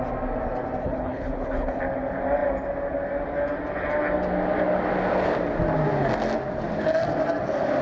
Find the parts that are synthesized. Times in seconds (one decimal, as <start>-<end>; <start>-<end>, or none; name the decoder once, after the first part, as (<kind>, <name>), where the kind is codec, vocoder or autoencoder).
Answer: 0.8-1.8 (codec, HILCodec)